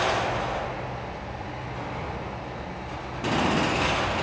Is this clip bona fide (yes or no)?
yes